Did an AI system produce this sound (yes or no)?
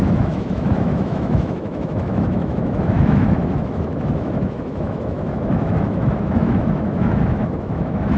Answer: yes